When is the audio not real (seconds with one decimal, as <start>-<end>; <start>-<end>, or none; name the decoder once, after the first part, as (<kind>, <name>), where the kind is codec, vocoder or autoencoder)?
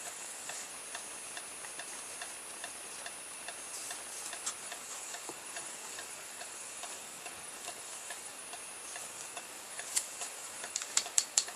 0.0-0.7 (codec, DAC); 4.6-8.4; 9.0-11.6